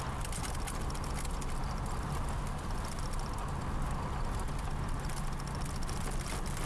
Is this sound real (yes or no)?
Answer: yes